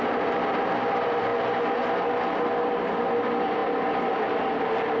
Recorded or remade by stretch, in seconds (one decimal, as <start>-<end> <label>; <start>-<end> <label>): 0.0-5.0 recorded